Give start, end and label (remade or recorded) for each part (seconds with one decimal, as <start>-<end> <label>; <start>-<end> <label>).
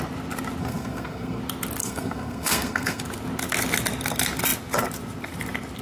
0.0-0.6 recorded; 0.6-1.4 remade; 1.4-1.8 recorded; 1.8-3.0 remade; 3.0-5.8 recorded